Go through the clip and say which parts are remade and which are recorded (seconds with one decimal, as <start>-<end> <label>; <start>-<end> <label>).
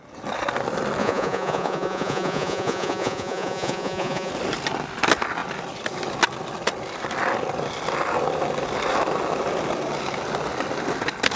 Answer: 0.0-1.0 recorded; 1.0-4.3 remade; 4.3-11.4 recorded